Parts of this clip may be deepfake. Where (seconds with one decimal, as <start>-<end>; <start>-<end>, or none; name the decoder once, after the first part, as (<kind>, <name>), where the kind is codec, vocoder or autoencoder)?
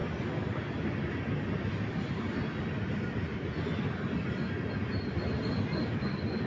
4.9-5.5 (vocoder, BigVGAN v2)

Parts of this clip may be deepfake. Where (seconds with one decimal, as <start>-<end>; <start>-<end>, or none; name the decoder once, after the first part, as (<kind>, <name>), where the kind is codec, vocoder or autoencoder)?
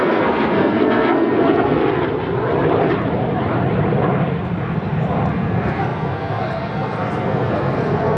0.0-1.8 (codec, SNAC); 5.3-8.2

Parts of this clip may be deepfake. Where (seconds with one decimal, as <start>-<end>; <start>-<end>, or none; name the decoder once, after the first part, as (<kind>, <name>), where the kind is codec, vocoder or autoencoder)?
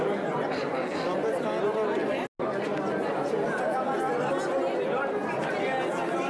none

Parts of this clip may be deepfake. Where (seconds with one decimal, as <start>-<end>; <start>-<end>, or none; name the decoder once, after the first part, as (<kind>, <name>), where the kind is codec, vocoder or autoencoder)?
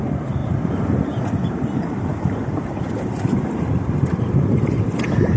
0.0-0.4 (vocoder, BigVGAN v2); 1.5-5.4